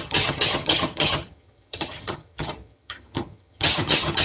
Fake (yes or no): yes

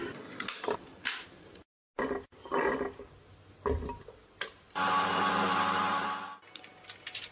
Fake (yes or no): no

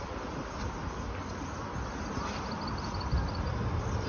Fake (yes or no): no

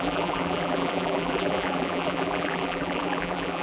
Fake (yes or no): yes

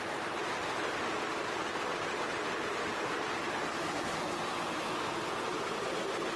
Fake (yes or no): no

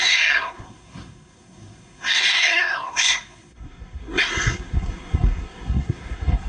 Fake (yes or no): yes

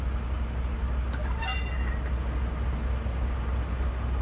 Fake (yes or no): no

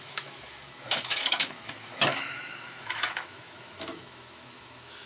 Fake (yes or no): yes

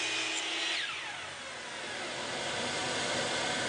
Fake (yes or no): no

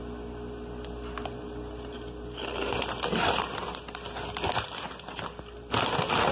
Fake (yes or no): no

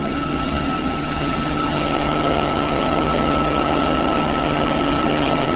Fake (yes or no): yes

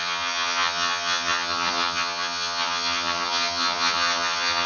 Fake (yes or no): yes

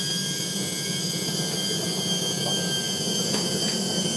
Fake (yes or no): no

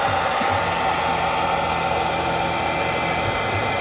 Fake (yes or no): no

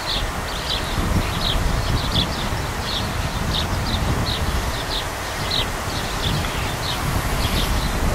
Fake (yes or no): no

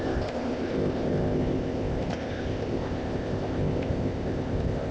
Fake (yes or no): yes